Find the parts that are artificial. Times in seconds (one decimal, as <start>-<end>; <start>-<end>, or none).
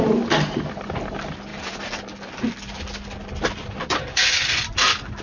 none